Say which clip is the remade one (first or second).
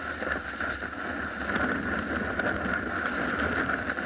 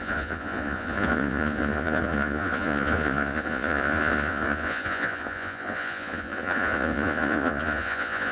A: second